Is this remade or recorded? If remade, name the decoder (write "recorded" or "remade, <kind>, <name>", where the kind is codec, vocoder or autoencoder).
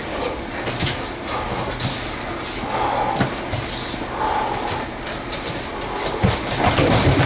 recorded